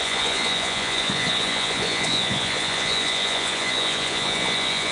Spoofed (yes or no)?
yes